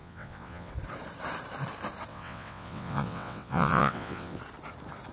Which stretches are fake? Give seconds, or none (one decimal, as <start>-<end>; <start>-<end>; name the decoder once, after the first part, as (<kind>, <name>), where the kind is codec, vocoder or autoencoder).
0.0-0.7 (vocoder, WaveNeXt); 2.1-4.4